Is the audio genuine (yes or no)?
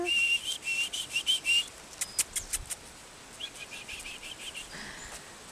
yes